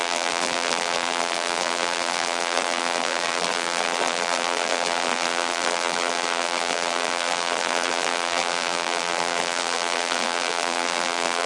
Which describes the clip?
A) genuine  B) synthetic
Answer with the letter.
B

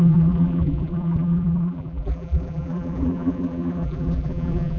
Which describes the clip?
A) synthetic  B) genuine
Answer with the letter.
A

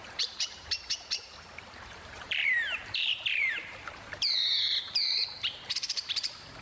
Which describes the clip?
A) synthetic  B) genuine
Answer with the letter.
A